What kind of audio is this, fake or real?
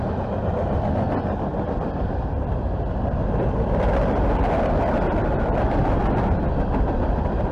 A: real